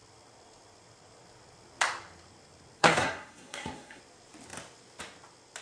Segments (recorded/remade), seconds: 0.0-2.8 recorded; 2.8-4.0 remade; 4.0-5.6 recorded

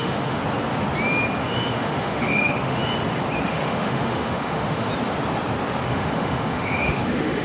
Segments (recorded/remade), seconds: 0.0-0.4 remade; 0.4-1.4 recorded; 1.4-2.8 remade; 2.8-3.5 recorded; 3.5-4.9 remade; 4.9-5.9 recorded; 5.9-7.4 remade

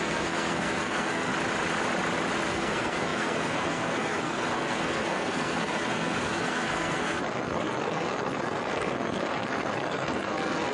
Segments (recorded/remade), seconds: 0.0-1.3 remade; 1.3-2.5 recorded; 2.5-10.7 remade

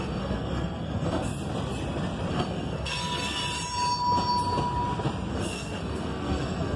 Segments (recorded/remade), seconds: 0.0-1.3 remade; 1.3-2.3 recorded; 2.3-3.4 remade; 3.4-5.3 recorded; 5.3-6.8 remade